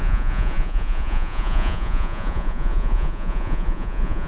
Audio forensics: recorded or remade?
remade